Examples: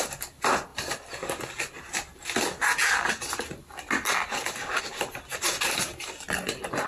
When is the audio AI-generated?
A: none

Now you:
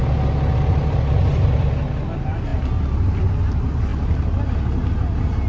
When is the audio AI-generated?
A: none

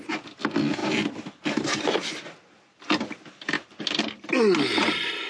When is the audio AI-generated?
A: none

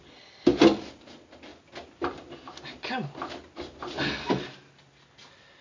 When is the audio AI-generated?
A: none